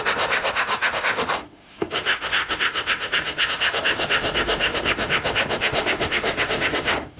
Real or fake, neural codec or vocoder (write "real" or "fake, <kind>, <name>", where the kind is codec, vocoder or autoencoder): fake, autoencoder, DAC-VAE